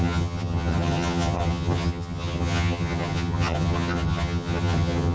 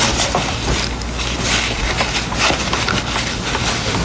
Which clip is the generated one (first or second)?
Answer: first